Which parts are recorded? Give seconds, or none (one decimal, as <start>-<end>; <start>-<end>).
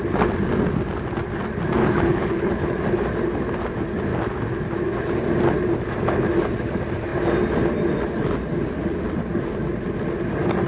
0.0-1.8; 2.8-10.7